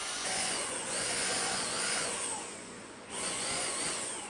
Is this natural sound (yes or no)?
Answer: no